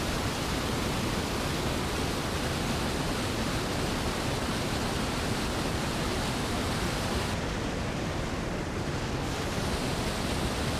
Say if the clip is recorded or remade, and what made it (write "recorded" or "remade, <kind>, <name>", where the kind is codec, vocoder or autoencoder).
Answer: recorded